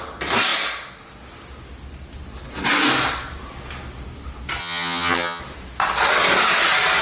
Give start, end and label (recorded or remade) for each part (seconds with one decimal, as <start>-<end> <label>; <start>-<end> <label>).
0.0-4.6 recorded; 4.6-5.4 remade; 5.4-7.0 recorded